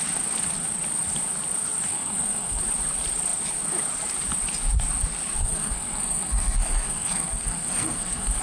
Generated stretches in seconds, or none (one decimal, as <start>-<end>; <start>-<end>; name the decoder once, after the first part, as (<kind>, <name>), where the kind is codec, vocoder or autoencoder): 1.9-2.6 (codec, SNAC); 5.4-8.4